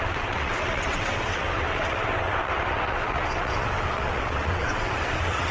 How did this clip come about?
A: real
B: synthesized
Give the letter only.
B